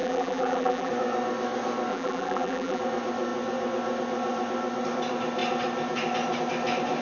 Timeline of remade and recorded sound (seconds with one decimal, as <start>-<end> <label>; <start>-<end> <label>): 0.0-0.9 remade; 0.9-1.9 recorded; 1.9-2.8 remade; 2.8-7.0 recorded